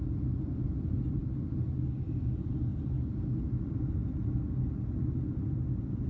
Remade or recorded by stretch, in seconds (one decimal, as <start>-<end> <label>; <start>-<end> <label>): 0.0-6.1 recorded